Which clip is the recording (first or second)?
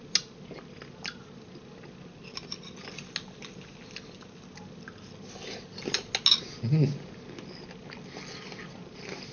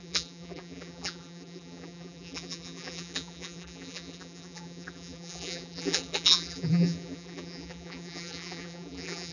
first